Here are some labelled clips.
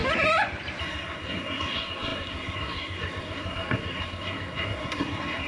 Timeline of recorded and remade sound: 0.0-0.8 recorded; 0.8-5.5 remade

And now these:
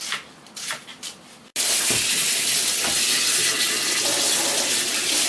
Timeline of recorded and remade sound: 0.0-5.3 recorded

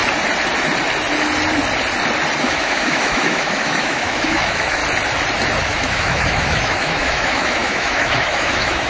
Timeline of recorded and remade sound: 0.0-2.4 recorded; 2.4-4.8 remade; 4.8-5.6 recorded; 5.6-8.9 remade

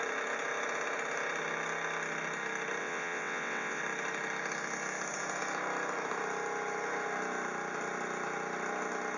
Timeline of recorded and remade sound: 0.0-2.8 recorded; 2.8-3.8 remade; 3.8-9.2 recorded

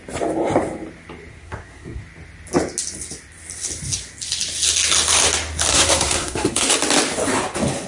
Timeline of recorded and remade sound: 0.0-1.3 recorded; 1.3-2.0 remade; 2.0-5.7 recorded; 5.7-6.7 remade; 6.7-7.9 recorded

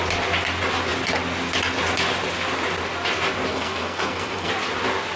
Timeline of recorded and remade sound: 0.0-3.5 recorded; 3.5-4.5 remade; 4.5-5.2 recorded

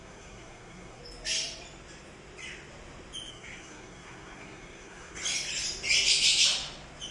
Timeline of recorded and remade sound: 0.0-1.0 remade; 1.0-3.3 recorded; 3.3-5.2 remade; 5.2-7.1 recorded

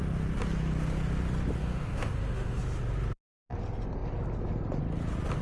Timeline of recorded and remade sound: 0.0-1.6 recorded; 1.6-2.6 remade; 2.6-5.4 recorded